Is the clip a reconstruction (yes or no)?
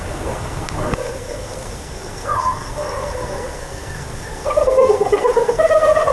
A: yes